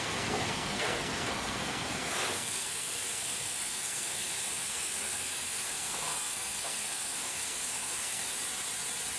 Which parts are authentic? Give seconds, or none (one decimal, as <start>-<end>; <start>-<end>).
8.3-9.2